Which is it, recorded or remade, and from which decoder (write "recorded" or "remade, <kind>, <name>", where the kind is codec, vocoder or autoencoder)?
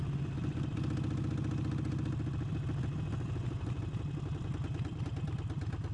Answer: recorded